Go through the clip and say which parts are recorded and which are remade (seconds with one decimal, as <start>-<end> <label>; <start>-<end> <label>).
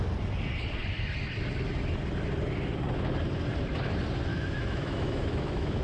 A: 0.0-4.3 recorded; 4.3-5.8 remade